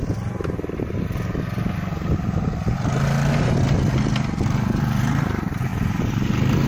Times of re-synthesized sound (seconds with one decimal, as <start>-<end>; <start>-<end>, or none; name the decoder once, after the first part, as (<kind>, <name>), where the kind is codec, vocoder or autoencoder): none